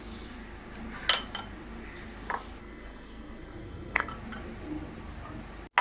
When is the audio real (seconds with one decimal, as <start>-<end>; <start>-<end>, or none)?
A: 0.0-2.6; 4.1-5.8